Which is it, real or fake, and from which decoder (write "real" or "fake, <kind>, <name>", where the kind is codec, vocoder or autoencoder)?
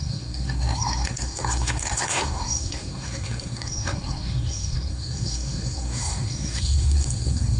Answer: fake, codec, SNAC